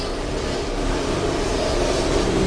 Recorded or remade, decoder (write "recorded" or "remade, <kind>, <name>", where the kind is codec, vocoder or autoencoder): recorded